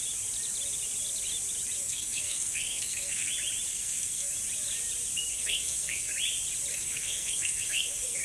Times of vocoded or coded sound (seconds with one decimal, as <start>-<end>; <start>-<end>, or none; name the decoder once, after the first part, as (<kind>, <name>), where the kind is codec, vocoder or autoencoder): 1.8-3.3 (codec, SNAC); 3.7-4.3; 5.3-6.1; 6.7-8.2